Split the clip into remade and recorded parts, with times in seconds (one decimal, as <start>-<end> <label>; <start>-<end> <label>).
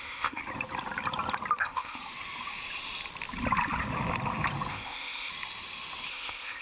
0.0-0.4 remade; 0.4-1.6 recorded; 1.6-2.0 remade; 2.0-4.7 recorded; 4.7-5.3 remade; 5.3-6.1 recorded; 6.1-6.6 remade